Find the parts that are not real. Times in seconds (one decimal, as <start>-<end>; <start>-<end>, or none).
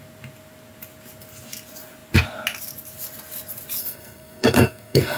3.8-5.2